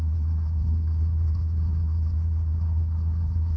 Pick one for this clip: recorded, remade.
remade